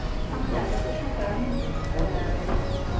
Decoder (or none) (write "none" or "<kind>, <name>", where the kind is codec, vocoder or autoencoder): none